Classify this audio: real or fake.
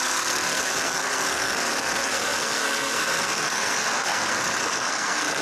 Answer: fake